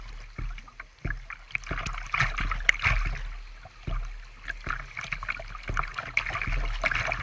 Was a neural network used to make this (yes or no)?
no